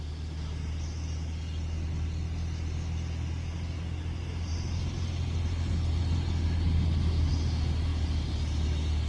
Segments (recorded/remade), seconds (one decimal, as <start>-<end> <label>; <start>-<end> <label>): 0.0-9.1 recorded